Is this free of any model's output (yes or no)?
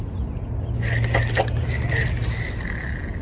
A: yes